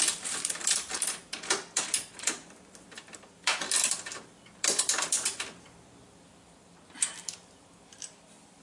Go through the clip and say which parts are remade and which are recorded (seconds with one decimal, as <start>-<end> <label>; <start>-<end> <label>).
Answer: 0.0-8.6 remade